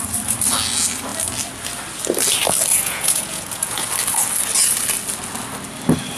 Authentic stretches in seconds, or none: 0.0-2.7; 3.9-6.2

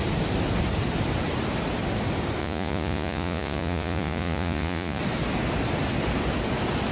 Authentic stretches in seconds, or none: 0.0-2.4; 5.0-6.9

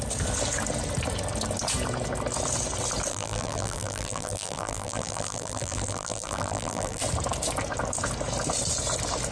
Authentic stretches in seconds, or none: 0.0-3.1; 7.0-9.3

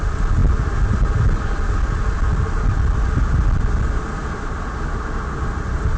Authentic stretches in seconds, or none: 0.0-6.0

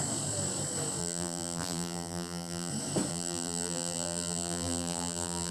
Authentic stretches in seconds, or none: 0.0-1.0; 2.7-3.1

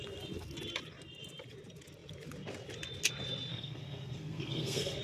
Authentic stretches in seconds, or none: 0.0-3.5

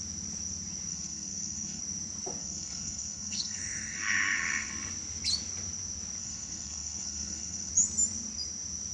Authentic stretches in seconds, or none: 0.0-0.9; 1.8-2.4; 4.7-6.2; 7.7-8.9